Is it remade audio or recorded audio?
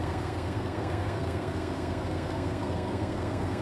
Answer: remade